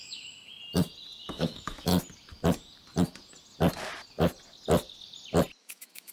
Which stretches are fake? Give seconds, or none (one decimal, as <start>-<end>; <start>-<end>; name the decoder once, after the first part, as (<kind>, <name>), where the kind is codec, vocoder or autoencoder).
0.0-0.5 (autoencoder, DAC-VAE); 1.3-1.9; 5.6-6.1